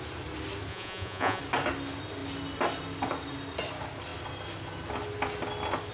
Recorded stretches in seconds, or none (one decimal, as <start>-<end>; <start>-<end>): 0.0-0.7; 1.4-5.9

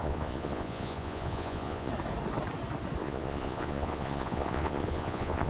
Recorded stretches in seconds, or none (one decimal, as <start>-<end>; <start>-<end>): 1.9-3.0

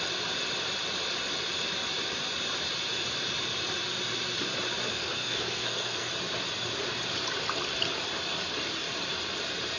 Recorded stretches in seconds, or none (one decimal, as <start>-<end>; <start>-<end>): 0.0-4.9; 6.1-9.8

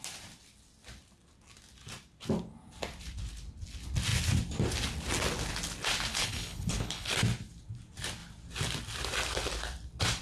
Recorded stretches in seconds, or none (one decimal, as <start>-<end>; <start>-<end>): 0.0-6.1; 7.1-10.2

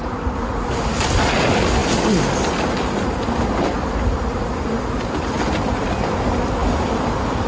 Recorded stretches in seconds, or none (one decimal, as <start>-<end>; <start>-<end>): 0.0-7.5